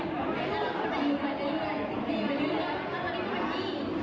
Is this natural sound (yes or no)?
yes